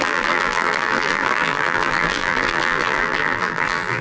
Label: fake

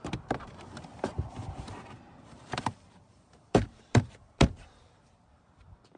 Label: fake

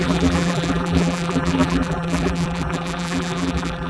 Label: fake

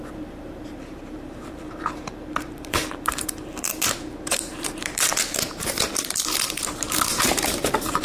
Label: fake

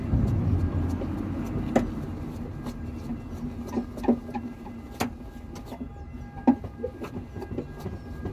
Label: real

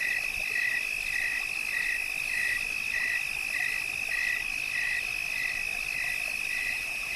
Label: real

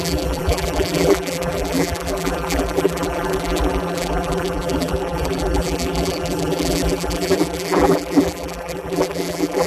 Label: fake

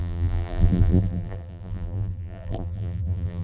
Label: fake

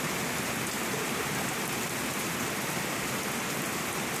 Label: real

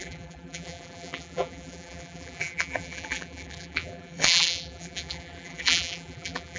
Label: fake